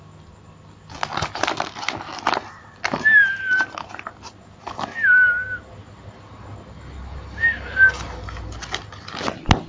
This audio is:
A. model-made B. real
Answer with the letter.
B